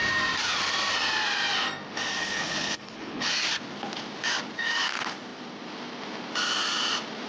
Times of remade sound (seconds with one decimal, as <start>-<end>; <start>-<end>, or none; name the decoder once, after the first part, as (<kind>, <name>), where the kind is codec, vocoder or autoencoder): 2.2-3.3 (codec, HILCodec)